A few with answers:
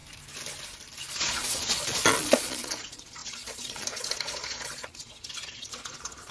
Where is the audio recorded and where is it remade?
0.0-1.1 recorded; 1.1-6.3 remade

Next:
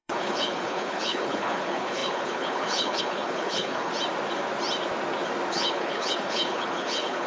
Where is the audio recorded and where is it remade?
0.0-3.9 remade; 3.9-5.5 recorded; 5.5-7.3 remade

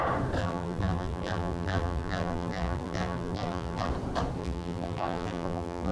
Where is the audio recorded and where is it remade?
0.0-0.4 recorded; 0.4-3.9 remade; 3.9-4.4 recorded; 4.4-5.9 remade

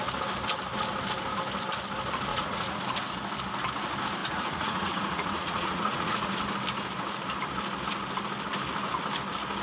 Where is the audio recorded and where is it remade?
0.0-2.3 recorded; 2.3-2.8 remade; 2.8-4.2 recorded; 4.2-6.3 remade; 6.3-9.6 recorded

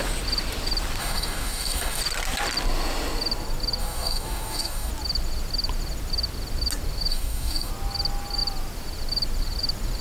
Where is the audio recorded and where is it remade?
0.0-1.0 recorded; 1.0-2.0 remade; 2.0-3.8 recorded; 3.8-4.9 remade; 4.9-7.1 recorded; 7.1-7.7 remade; 7.7-10.0 recorded

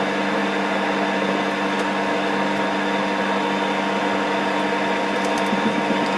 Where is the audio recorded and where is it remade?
0.0-6.2 recorded

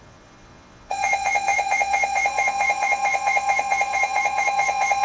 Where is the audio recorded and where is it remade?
0.0-5.0 remade

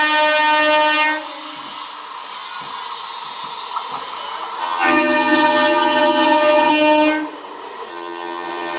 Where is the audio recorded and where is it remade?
0.0-4.6 recorded; 4.6-6.7 remade; 6.7-7.9 recorded; 7.9-8.8 remade